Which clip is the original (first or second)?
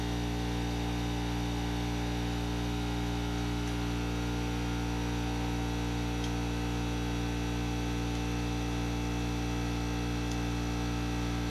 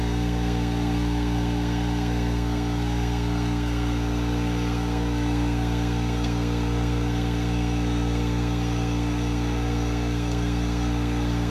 first